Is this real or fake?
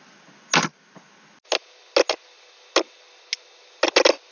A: real